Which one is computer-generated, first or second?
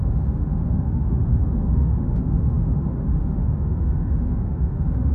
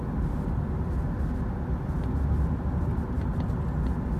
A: first